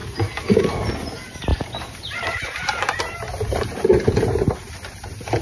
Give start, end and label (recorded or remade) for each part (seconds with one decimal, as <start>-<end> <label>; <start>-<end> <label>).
0.0-1.5 recorded; 1.5-4.7 remade; 4.7-5.4 recorded